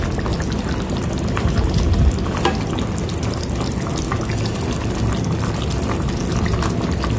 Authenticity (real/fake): real